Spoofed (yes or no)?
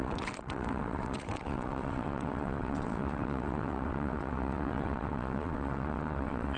yes